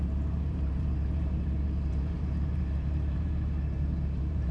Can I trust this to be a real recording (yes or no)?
no